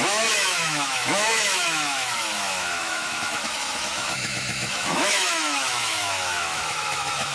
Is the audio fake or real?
fake